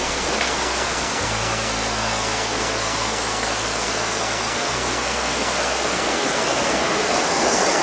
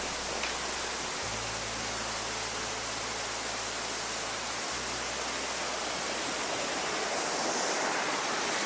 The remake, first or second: first